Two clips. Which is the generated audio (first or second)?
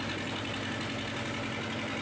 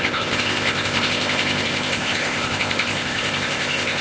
second